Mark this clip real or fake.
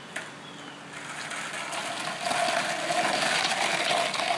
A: real